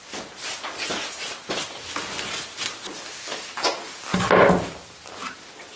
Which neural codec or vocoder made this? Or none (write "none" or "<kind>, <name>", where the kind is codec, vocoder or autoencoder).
none